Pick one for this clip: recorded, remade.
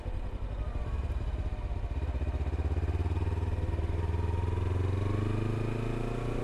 recorded